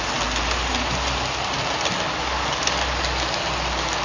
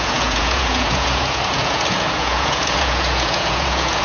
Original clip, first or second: first